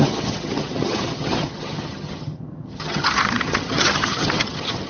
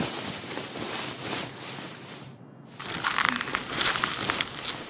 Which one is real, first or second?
second